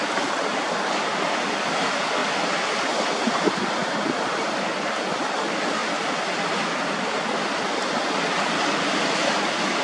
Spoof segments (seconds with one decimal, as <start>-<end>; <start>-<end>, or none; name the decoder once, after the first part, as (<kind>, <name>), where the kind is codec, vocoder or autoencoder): none